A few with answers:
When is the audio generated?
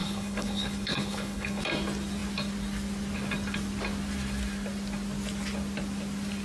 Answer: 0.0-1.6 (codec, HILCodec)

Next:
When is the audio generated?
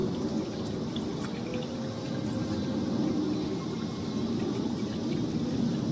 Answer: none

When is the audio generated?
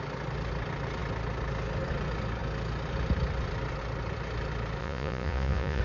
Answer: 4.8-5.8 (vocoder, Vocos)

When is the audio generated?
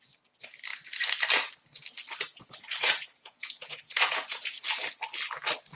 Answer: 2.3-4.5 (vocoder, Vocos)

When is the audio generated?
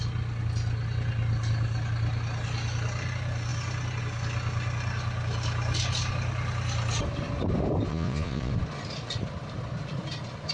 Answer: 7.9-8.5 (vocoder, Vocos)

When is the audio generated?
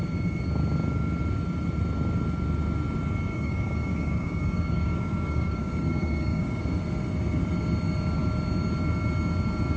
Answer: 3.3-6.6 (codec, DAC)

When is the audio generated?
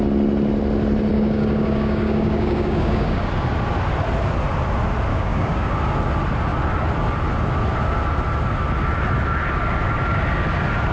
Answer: 1.1-3.3 (codec, DAC); 5.1-5.7